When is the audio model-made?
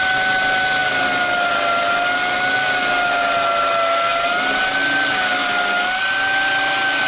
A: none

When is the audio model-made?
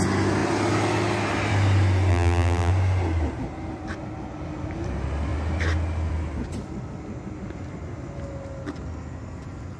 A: 2.1-2.7